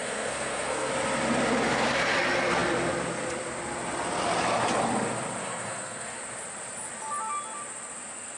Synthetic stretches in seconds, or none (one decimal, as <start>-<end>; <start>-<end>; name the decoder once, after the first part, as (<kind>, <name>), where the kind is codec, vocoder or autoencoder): 0.0-0.9 (codec, SNAC); 5.4-6.2